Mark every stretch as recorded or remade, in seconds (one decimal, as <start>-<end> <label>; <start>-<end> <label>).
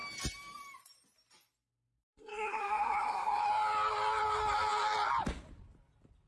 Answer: 0.0-2.0 recorded; 2.0-3.4 remade; 3.4-6.3 recorded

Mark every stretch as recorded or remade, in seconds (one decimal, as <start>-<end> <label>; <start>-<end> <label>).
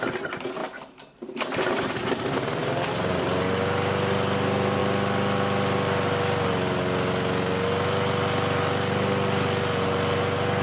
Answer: 0.0-10.6 recorded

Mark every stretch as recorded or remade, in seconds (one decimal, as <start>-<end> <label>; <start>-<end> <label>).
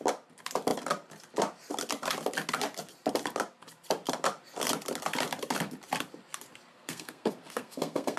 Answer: 0.0-6.7 recorded; 6.7-8.2 remade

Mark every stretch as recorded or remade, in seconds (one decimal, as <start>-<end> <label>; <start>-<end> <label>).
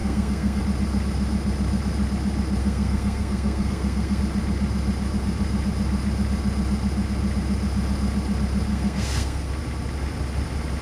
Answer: 0.0-0.6 remade; 0.6-2.6 recorded; 2.6-4.2 remade; 4.2-8.7 recorded; 8.7-9.5 remade; 9.5-10.8 recorded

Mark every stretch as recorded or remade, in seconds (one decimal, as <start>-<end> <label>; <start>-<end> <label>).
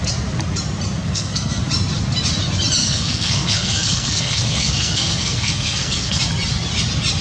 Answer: 0.0-1.0 recorded; 1.0-1.6 remade; 1.6-2.8 recorded; 2.8-6.2 remade; 6.2-7.2 recorded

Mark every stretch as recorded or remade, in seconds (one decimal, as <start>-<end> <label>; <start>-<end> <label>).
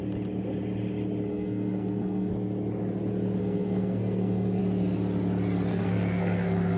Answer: 0.0-1.3 recorded; 1.3-2.3 remade; 2.3-3.4 recorded; 3.4-4.6 remade; 4.6-5.7 recorded; 5.7-6.8 remade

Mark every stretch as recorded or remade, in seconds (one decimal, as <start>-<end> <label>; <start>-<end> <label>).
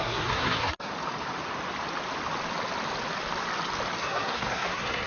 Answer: 0.0-0.9 remade; 0.9-4.0 recorded; 4.0-5.1 remade